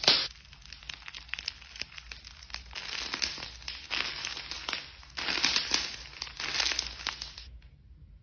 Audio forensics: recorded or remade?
recorded